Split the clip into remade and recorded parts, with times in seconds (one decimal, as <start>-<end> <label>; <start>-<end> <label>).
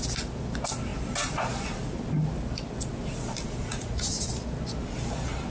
0.0-3.6 recorded; 3.6-4.3 remade; 4.3-5.5 recorded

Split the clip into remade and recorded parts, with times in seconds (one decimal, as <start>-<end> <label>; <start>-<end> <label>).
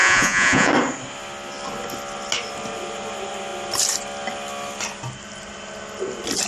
0.0-0.7 remade; 0.7-6.5 recorded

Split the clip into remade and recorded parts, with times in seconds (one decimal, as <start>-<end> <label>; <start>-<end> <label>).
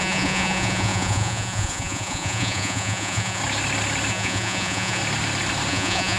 0.0-3.4 remade; 3.4-4.1 recorded; 4.1-5.0 remade; 5.0-5.7 recorded; 5.7-6.2 remade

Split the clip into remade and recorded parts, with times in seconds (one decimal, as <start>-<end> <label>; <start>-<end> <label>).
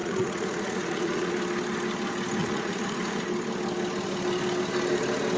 0.0-1.3 remade; 1.3-2.4 recorded; 2.4-3.2 remade; 3.2-5.4 recorded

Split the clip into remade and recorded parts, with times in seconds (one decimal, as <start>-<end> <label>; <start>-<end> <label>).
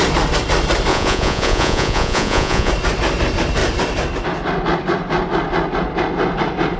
0.0-0.9 recorded; 0.9-2.7 remade; 2.7-6.8 recorded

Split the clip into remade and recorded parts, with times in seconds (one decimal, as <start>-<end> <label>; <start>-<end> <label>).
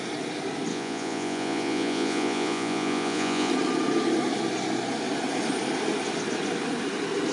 0.0-0.7 recorded; 0.7-3.5 remade; 3.5-7.3 recorded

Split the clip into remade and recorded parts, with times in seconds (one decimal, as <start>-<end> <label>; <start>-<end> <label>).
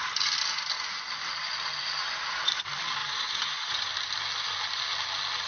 0.0-2.0 recorded; 2.0-2.6 remade; 2.6-3.0 recorded; 3.0-3.9 remade; 3.9-5.5 recorded